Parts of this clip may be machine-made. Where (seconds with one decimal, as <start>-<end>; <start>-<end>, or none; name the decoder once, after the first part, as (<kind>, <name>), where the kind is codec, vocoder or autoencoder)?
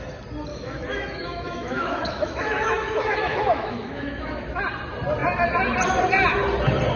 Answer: 0.5-4.6 (autoencoder, DAC-VAE)